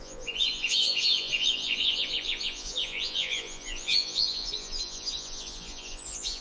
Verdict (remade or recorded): remade